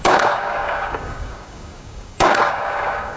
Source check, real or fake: fake